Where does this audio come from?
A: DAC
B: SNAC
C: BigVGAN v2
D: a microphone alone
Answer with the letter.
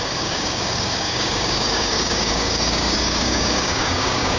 A